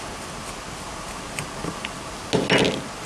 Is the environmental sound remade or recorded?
recorded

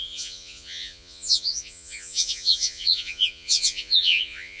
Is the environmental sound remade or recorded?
remade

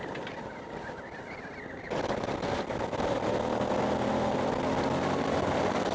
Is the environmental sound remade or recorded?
recorded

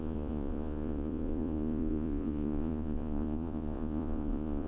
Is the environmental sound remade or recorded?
remade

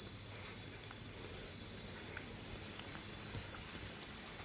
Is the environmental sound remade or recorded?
recorded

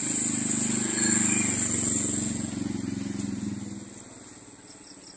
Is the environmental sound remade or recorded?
recorded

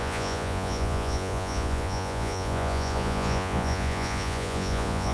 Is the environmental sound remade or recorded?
remade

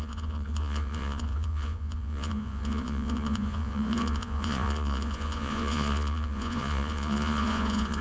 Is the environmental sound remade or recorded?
remade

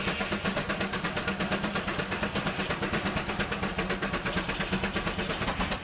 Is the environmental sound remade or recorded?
recorded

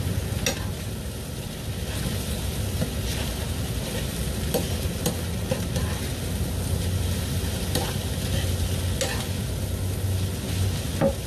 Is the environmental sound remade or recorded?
recorded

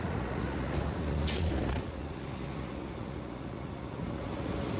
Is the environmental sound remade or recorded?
remade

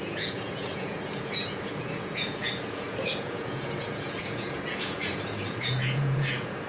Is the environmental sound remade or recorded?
remade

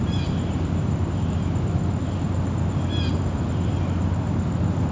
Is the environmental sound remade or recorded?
recorded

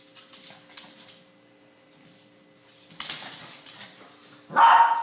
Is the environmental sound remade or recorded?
recorded